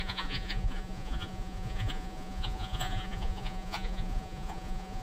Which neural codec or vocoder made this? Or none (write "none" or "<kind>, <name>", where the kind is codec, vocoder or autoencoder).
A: vocoder, Vocos